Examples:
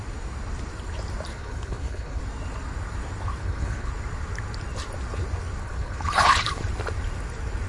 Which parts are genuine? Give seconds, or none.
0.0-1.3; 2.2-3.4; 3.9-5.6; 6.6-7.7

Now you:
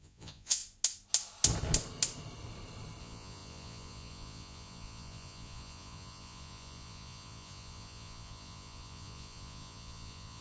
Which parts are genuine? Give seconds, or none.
0.6-3.0